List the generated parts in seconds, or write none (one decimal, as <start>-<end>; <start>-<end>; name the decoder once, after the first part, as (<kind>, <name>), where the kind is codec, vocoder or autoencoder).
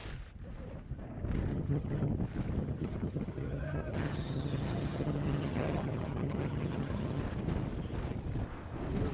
1.5-2.1 (vocoder, HiFi-GAN); 2.6-7.2